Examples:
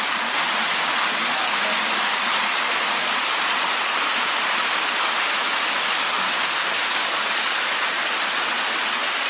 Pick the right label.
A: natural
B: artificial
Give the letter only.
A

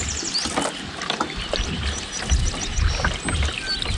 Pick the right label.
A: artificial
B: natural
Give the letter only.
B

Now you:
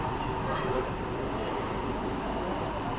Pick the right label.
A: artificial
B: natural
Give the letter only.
B